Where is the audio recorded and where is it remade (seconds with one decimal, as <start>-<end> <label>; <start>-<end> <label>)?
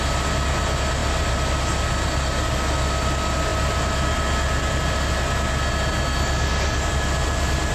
0.0-7.7 recorded